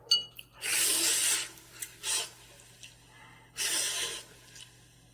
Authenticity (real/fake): real